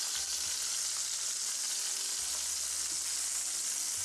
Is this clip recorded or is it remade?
recorded